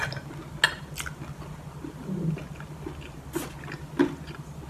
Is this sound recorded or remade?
recorded